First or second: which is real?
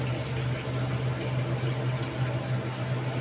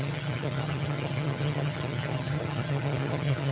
first